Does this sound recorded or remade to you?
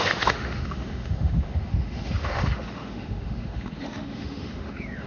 remade